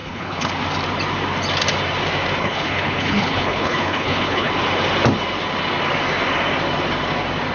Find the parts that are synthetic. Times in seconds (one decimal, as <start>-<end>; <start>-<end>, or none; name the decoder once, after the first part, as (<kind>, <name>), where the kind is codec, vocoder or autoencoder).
0.0-0.5 (codec, HILCodec); 2.4-4.5